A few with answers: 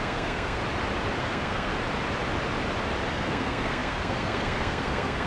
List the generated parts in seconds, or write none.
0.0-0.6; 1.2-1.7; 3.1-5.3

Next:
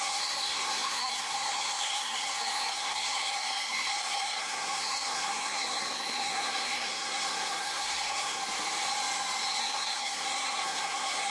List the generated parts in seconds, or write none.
0.0-8.4; 9.6-11.3

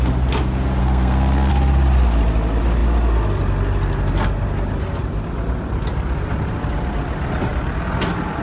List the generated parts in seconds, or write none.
0.8-1.5

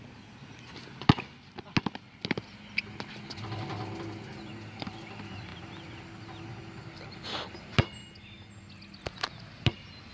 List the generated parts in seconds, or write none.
none

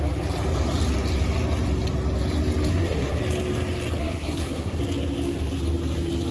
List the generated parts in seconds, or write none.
2.7-3.2; 4.0-4.8

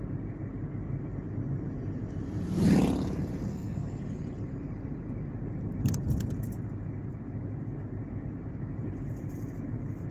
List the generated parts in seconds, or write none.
3.5-4.0

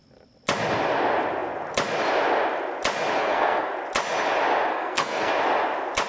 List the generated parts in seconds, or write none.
3.2-3.7; 4.7-5.3

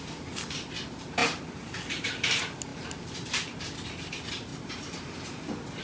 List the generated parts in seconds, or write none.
none